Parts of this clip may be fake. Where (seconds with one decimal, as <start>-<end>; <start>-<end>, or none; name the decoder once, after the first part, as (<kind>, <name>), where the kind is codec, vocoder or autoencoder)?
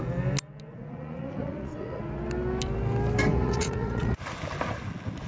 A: 0.7-2.0 (vocoder, Vocos); 3.3-4.2